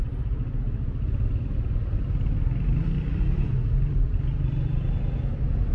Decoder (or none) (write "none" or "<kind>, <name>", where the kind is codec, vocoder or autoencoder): none